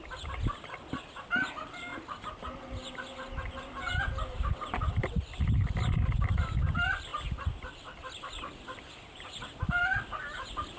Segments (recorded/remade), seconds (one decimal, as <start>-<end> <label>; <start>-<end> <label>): 0.0-10.8 recorded